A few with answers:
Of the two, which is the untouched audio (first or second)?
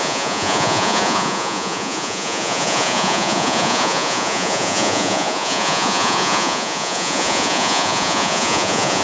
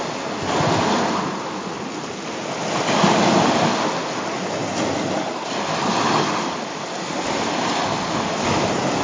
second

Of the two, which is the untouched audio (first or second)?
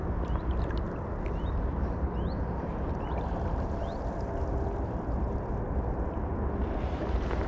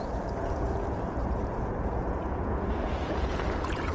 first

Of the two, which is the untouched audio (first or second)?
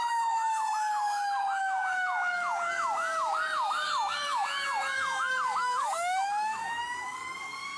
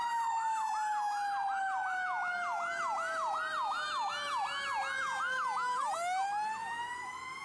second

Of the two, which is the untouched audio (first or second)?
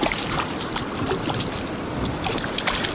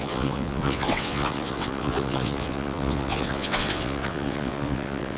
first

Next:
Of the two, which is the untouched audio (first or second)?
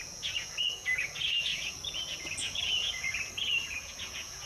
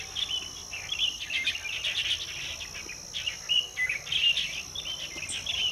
second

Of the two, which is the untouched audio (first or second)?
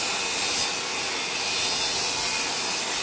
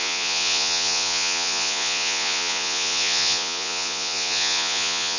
first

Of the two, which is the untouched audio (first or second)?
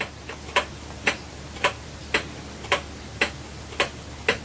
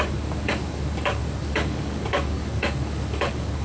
first